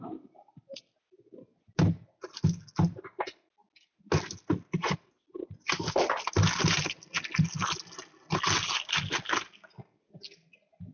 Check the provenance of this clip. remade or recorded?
recorded